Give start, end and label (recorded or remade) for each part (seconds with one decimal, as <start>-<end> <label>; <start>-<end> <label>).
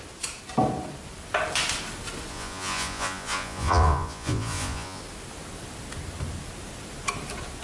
0.0-2.3 recorded; 2.3-5.0 remade; 5.0-7.6 recorded